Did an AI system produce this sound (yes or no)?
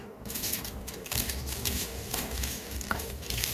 yes